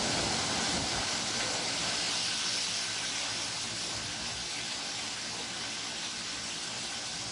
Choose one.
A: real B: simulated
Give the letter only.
A